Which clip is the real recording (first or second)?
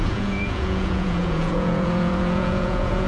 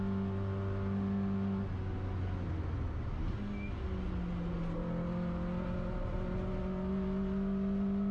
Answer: second